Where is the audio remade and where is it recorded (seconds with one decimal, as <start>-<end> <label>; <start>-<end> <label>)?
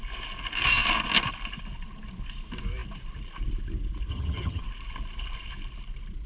0.0-4.1 recorded; 4.1-4.6 remade; 4.6-6.3 recorded